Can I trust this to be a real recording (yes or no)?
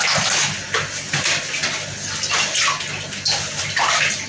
yes